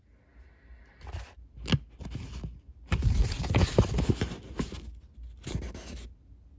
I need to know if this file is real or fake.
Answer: real